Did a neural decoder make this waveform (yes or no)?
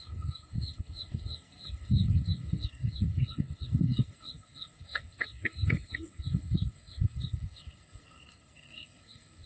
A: yes